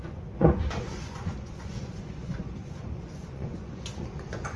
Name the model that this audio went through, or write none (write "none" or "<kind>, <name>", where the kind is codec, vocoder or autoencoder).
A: vocoder, Vocos